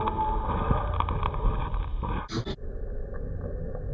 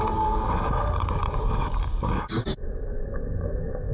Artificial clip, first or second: second